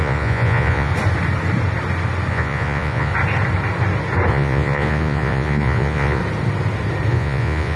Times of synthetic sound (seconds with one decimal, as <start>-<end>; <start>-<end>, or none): 0.0-0.9; 2.3-3.1; 4.3-6.2; 7.1-7.8